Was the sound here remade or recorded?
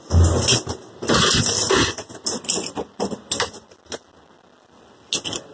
recorded